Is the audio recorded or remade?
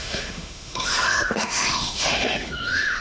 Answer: remade